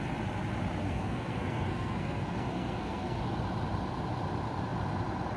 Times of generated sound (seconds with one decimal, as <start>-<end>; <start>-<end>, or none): 0.8-3.2

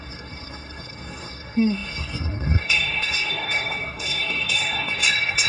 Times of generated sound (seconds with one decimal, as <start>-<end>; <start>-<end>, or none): 0.0-5.5

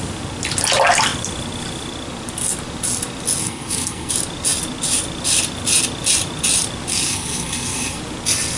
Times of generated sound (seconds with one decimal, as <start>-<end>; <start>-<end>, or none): 3.4-4.1; 6.9-8.0

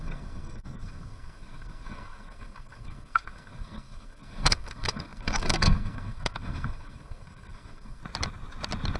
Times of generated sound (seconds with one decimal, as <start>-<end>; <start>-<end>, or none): 0.0-8.0

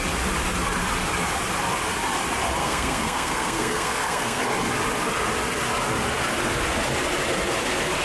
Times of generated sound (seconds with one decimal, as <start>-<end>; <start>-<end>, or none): 2.6-4.4